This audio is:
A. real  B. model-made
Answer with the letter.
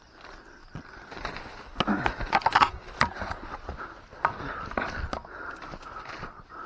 A